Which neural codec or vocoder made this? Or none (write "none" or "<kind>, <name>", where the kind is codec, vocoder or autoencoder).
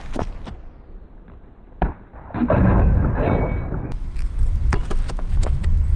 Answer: none